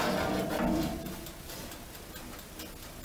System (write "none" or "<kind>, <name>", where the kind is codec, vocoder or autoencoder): none